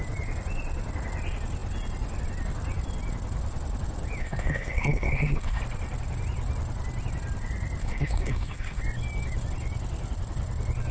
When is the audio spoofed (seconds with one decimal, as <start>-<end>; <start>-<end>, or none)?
4.2-5.6; 7.8-8.8